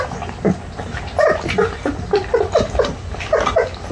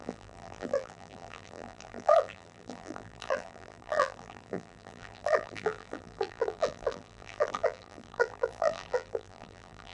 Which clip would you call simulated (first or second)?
second